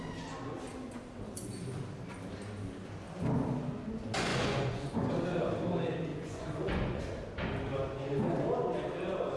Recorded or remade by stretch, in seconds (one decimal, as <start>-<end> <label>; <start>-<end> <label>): 0.0-4.3 recorded; 4.3-5.1 remade; 5.1-6.1 recorded; 6.1-7.0 remade; 7.0-9.4 recorded